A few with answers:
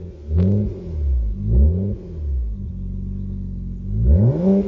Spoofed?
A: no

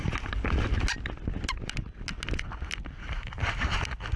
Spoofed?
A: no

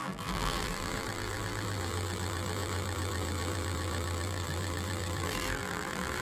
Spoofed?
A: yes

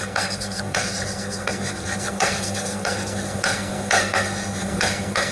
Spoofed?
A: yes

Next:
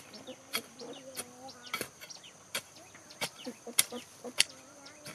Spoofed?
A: yes